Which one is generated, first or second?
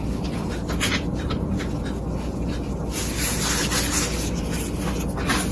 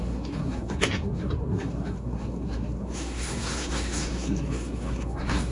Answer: second